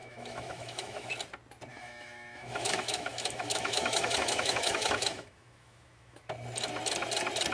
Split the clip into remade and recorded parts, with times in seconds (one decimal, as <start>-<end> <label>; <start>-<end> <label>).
0.0-1.1 remade; 1.1-1.7 recorded; 1.7-6.2 remade; 6.2-7.5 recorded